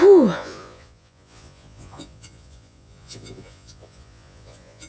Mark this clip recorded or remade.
remade